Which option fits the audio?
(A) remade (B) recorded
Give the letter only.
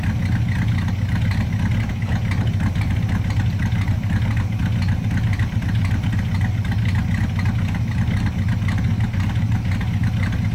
B